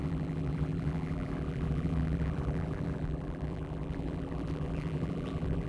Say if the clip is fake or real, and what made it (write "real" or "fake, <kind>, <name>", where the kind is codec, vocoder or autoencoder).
fake, vocoder, BigVGAN v2